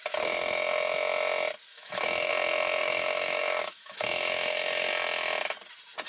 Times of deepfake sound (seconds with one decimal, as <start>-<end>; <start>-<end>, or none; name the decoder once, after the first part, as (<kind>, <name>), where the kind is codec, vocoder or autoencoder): 1.7-2.3 (autoencoder, DAC-VAE); 2.8-4.9